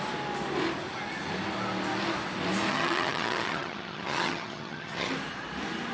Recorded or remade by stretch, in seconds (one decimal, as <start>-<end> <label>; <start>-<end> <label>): 0.0-2.7 recorded; 2.7-5.1 remade; 5.1-5.9 recorded